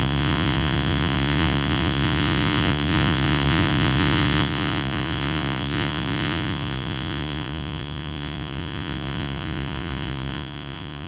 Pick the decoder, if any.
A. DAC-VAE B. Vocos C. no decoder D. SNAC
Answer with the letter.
B